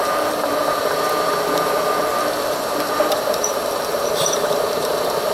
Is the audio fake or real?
fake